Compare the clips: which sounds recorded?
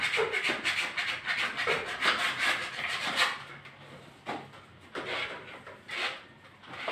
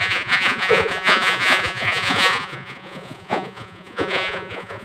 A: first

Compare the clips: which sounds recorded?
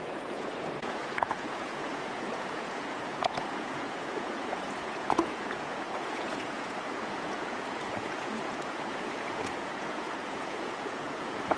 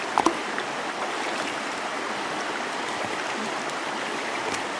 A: second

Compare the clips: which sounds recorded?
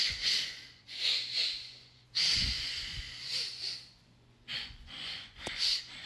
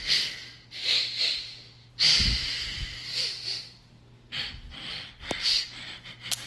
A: second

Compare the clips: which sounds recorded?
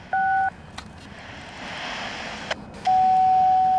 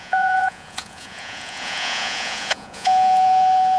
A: first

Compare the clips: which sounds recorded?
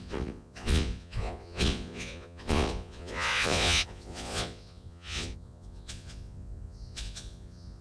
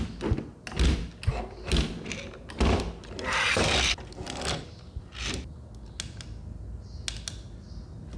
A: second